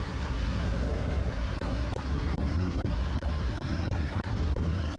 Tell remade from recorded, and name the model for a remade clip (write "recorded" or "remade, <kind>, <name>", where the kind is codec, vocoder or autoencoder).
remade, codec, SNAC